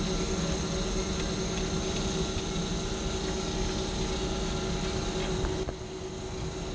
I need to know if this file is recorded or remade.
recorded